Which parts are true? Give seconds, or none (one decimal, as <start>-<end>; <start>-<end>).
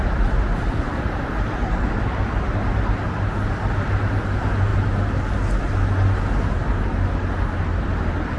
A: 0.0-8.4